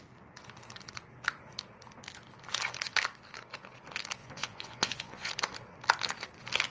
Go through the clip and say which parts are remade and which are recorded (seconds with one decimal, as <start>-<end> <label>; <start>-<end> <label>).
0.0-4.2 recorded; 4.2-5.3 remade; 5.3-6.7 recorded